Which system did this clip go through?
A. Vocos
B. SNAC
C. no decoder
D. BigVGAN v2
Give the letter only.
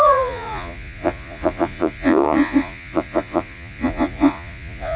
A